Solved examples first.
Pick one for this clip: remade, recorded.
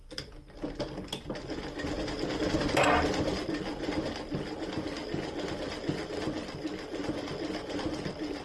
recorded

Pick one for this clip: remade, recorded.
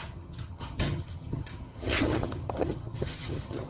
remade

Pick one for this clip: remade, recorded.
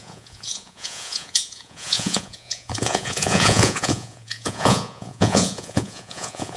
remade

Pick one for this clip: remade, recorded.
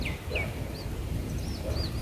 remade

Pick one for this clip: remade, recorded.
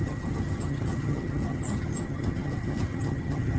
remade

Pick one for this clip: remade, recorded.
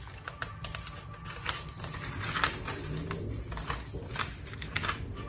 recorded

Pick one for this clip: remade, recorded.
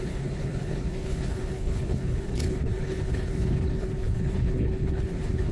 remade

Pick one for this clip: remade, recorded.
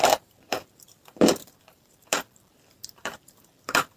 remade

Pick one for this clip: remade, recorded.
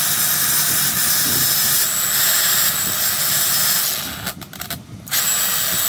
recorded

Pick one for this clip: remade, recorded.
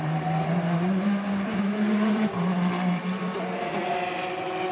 remade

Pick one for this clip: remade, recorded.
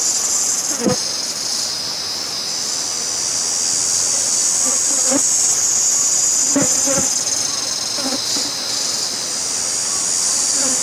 recorded